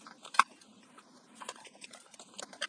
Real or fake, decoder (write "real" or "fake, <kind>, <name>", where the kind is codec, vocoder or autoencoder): real